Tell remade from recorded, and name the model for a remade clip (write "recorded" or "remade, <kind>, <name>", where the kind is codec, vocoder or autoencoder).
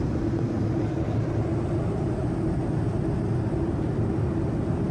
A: recorded